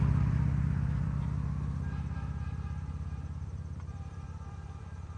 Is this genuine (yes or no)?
no